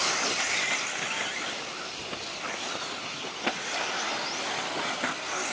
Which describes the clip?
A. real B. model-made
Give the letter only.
A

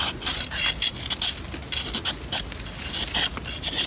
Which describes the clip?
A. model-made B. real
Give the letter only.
B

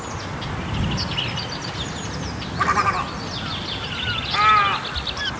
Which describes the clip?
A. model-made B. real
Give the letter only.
B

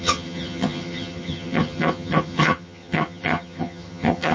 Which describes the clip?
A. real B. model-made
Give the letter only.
B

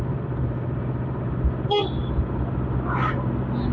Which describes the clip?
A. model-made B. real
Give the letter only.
B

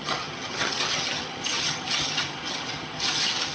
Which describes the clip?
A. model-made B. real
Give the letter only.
A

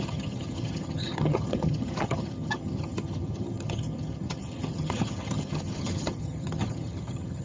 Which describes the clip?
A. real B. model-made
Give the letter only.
B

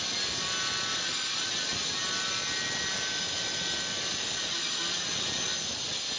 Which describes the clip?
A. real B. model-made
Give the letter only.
A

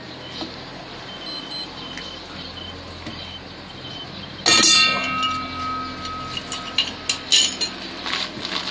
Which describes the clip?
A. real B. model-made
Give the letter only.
A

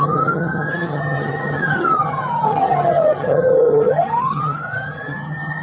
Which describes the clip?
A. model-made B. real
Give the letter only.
A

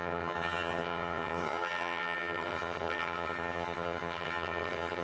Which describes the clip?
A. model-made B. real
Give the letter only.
A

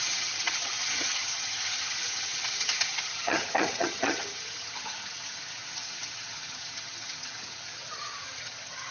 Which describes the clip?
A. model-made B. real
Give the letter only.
A